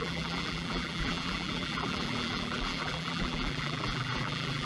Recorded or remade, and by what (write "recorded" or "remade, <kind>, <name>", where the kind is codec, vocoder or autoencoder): remade, vocoder, BigVGAN v2